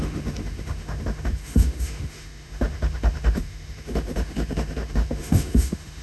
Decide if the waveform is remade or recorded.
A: remade